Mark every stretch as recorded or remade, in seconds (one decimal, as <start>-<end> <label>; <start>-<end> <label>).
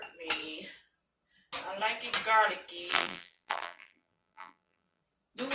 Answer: 0.0-2.9 recorded; 2.9-5.0 remade; 5.0-5.5 recorded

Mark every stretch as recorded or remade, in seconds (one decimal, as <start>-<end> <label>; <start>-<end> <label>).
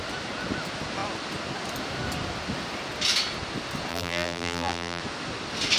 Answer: 0.0-3.9 recorded; 3.9-5.0 remade; 5.0-5.8 recorded